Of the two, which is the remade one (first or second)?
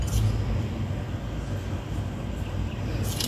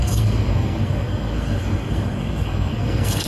second